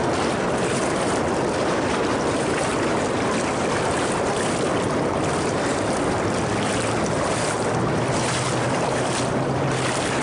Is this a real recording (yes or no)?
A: yes